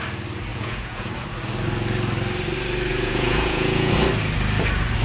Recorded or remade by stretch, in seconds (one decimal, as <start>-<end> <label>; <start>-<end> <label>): 0.0-0.5 recorded; 0.5-1.1 remade; 1.1-2.9 recorded; 2.9-3.9 remade; 3.9-5.0 recorded